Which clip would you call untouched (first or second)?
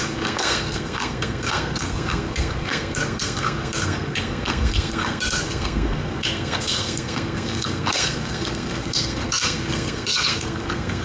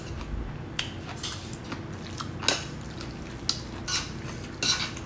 second